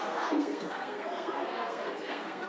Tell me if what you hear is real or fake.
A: fake